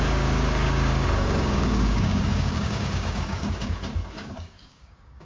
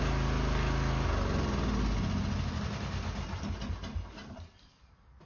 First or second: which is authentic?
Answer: second